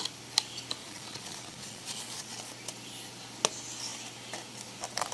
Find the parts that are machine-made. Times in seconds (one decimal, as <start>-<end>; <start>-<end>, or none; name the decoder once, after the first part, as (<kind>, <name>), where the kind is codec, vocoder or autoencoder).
0.8-2.5 (vocoder, Vocos)

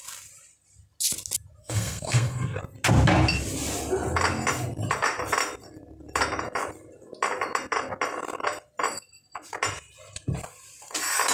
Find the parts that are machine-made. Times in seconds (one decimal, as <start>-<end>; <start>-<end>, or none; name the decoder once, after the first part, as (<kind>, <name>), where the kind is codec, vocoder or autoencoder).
1.6-2.6 (codec, SNAC)

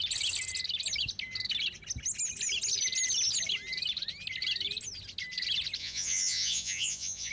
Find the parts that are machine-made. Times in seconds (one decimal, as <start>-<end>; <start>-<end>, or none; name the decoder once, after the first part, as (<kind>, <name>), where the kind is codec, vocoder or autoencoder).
5.8-7.3 (vocoder, Vocos)

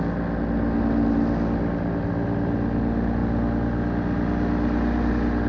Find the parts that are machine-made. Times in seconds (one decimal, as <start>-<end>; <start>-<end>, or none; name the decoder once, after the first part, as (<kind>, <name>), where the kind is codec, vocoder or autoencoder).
none

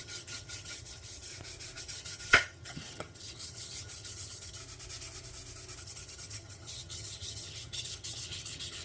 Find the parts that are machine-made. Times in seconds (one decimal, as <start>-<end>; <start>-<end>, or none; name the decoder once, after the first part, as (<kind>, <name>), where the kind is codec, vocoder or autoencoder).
0.0-1.3 (vocoder, HiFi-GAN); 1.8-4.6; 5.8-8.8

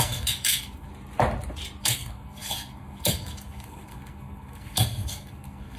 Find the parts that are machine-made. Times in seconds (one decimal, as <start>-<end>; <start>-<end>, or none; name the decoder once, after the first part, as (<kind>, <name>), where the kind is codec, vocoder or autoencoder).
0.0-0.9 (codec, SNAC); 1.8-5.8